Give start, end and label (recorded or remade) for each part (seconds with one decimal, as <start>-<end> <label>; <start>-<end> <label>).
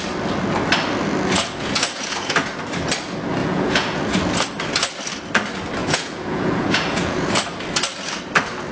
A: 0.0-1.4 recorded; 1.4-2.5 remade; 2.5-3.4 recorded; 3.4-4.0 remade; 4.0-5.8 recorded; 5.8-7.3 remade; 7.3-8.7 recorded